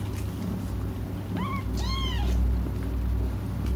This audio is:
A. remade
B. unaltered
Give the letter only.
B